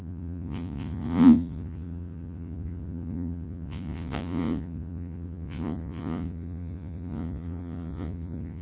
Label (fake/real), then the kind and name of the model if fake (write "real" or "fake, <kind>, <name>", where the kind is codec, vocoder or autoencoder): fake, vocoder, Vocos